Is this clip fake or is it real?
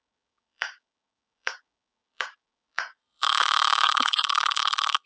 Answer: fake